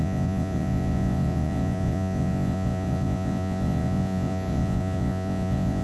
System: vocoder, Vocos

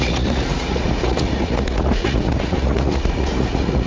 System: vocoder, Vocos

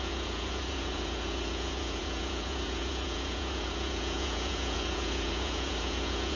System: vocoder, Vocos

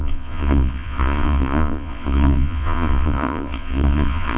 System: vocoder, Vocos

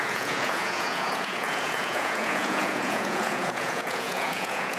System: vocoder, Vocos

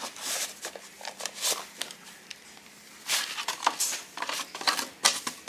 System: none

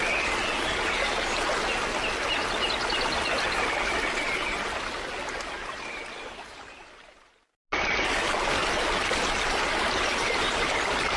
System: none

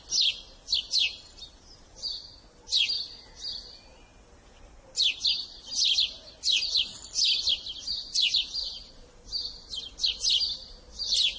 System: none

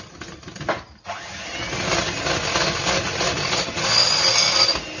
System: none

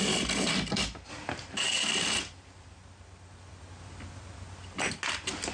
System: none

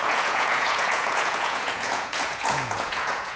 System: vocoder, Vocos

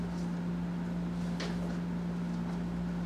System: none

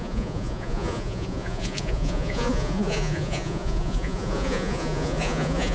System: vocoder, Vocos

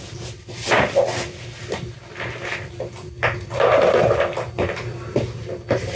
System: none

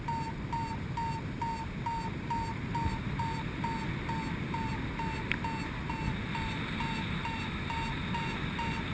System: none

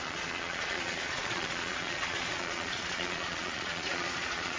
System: vocoder, Vocos